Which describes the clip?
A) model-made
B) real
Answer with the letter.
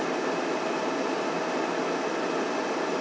B